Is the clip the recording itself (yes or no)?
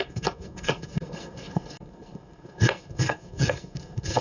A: no